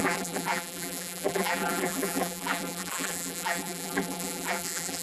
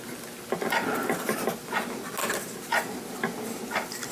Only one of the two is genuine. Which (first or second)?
second